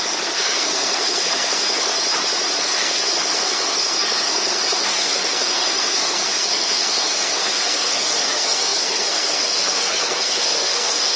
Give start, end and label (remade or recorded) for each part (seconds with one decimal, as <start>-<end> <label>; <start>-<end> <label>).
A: 0.0-1.9 remade; 1.9-2.6 recorded; 2.6-11.2 remade